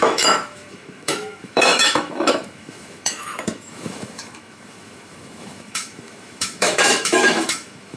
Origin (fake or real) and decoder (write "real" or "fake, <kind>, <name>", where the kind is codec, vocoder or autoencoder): fake, autoencoder, DAC-VAE